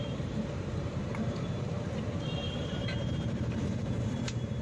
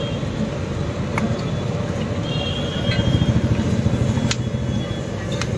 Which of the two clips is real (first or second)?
second